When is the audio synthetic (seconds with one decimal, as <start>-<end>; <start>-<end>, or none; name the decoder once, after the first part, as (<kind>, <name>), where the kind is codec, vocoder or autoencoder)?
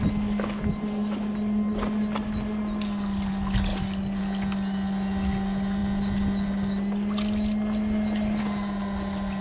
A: none